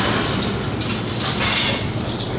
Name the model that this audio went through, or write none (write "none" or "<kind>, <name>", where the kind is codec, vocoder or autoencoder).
none